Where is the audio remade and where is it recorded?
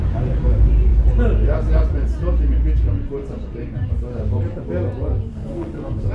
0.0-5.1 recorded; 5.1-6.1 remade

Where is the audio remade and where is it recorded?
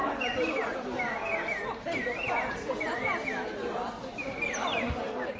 0.0-5.4 recorded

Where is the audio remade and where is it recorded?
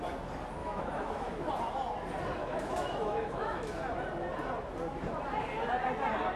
0.0-0.6 recorded; 0.6-1.5 remade; 1.5-2.4 recorded; 2.4-3.8 remade; 3.8-6.4 recorded